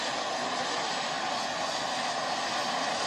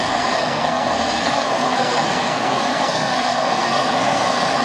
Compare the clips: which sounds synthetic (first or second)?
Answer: second